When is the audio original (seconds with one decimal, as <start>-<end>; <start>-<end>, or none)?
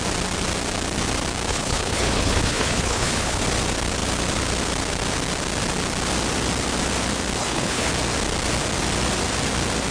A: 0.0-1.5; 3.4-7.4; 7.9-9.9